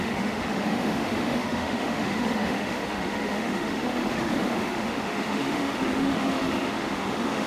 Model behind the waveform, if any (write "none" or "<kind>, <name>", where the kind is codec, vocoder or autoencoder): autoencoder, DAC-VAE